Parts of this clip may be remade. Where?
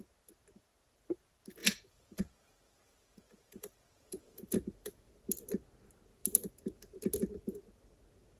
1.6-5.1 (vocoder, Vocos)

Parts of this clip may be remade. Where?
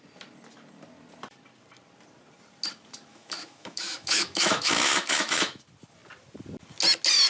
3.1-5.6 (autoencoder, DAC-VAE)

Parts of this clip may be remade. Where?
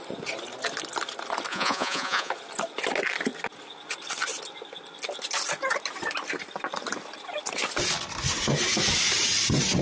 1.5-2.3 (vocoder, Vocos)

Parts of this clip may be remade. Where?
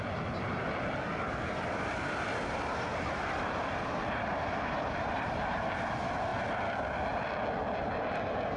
2.9-5.8 (vocoder, BigVGAN v2)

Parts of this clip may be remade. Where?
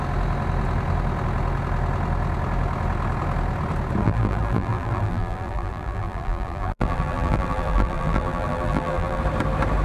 4.0-9.2 (vocoder, BigVGAN v2)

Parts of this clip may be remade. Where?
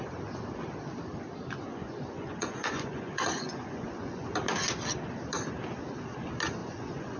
1.7-4.3 (vocoder, Vocos); 6.6-7.2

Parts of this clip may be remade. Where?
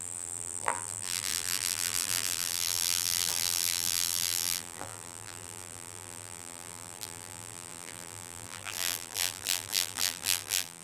0.0-10.8 (vocoder, BigVGAN v2)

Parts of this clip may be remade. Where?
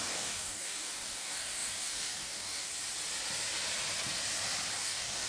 0.0-2.7 (codec, DAC); 4.7-5.3